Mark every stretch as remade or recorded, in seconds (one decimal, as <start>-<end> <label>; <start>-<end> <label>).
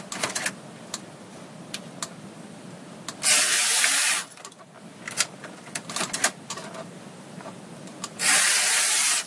0.0-5.4 recorded; 5.4-8.5 remade; 8.5-9.3 recorded